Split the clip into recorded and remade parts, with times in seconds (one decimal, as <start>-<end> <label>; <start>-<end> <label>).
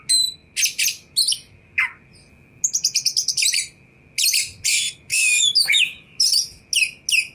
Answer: 0.0-5.1 recorded; 5.1-6.2 remade; 6.2-7.3 recorded